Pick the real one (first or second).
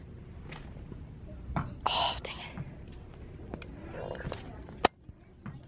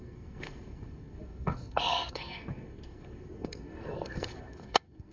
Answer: first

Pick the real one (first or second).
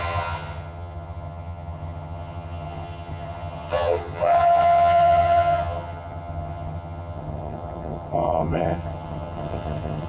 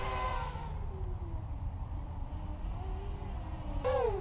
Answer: second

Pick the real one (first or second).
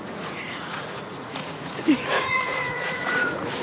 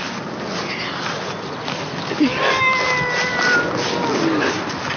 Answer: second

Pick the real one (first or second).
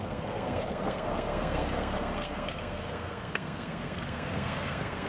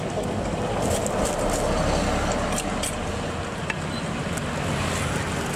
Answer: second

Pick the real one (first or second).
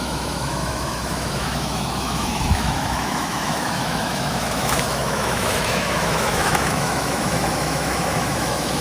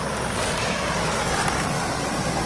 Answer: second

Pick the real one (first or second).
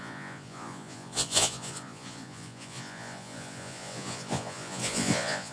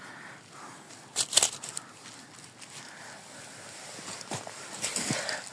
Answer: second